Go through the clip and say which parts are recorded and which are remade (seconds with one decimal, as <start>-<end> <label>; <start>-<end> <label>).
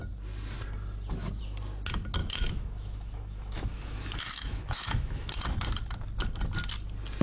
0.0-2.2 recorded; 2.2-5.3 remade; 5.3-7.2 recorded